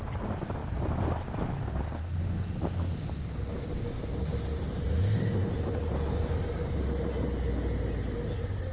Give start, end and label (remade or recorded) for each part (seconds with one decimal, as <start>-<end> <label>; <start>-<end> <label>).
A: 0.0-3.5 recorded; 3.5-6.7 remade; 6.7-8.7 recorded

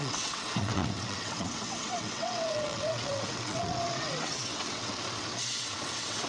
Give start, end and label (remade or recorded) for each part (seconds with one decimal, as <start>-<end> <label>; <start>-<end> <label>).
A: 0.0-6.3 remade

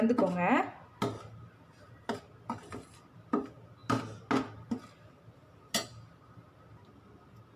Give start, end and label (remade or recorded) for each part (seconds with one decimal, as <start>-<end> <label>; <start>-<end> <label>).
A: 0.0-7.6 recorded

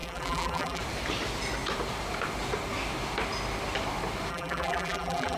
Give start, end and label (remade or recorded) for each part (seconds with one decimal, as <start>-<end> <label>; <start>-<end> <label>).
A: 0.0-0.8 remade; 0.8-4.3 recorded; 4.3-5.4 remade

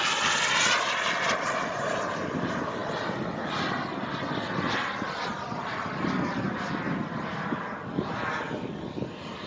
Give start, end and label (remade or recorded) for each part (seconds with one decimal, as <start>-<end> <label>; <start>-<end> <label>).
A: 0.0-9.5 recorded